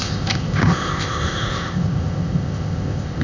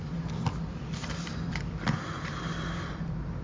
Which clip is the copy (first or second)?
first